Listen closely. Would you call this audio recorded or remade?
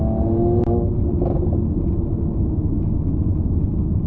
recorded